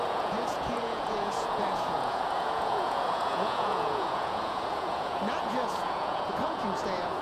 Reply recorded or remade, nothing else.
remade